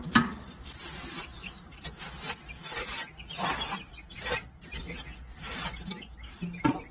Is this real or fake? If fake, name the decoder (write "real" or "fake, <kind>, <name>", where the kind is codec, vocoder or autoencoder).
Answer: real